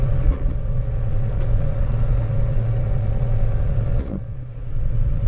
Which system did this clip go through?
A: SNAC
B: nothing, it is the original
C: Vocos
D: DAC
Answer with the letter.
C